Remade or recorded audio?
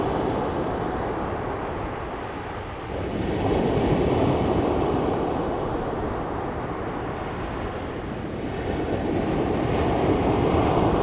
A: recorded